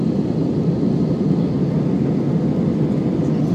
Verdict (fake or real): real